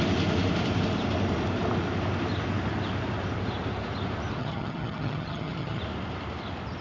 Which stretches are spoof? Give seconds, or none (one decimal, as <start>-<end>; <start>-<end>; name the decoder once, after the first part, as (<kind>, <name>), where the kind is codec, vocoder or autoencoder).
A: 4.4-5.8 (vocoder, HiFi-GAN)